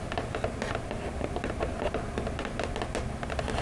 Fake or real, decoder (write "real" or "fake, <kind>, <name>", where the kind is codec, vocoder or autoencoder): real